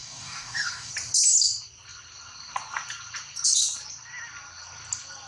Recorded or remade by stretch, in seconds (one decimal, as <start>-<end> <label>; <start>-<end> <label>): 0.0-0.9 remade; 0.9-5.3 recorded